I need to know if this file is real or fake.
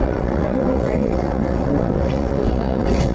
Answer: fake